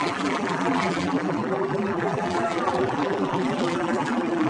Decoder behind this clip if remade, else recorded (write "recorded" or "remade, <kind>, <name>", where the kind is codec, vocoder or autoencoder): remade, vocoder, BigVGAN v2